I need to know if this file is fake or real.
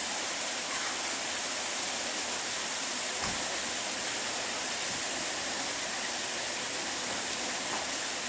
real